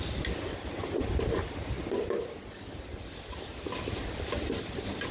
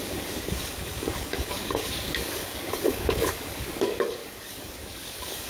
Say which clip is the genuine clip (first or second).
first